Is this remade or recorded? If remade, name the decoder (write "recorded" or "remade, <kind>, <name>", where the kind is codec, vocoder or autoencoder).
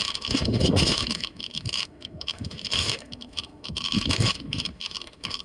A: remade, autoencoder, DAC-VAE